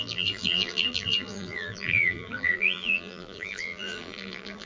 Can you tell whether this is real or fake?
fake